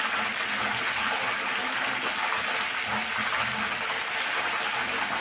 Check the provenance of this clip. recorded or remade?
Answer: recorded